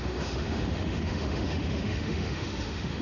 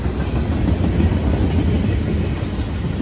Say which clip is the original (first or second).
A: second